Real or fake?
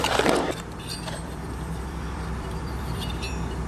fake